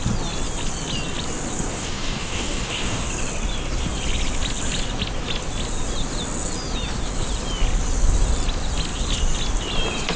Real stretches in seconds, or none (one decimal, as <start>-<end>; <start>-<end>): 0.0-1.7; 3.1-10.2